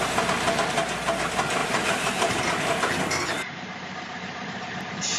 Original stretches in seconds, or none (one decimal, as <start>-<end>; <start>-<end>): 0.0-1.6; 2.4-3.8